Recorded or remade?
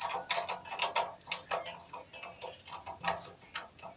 recorded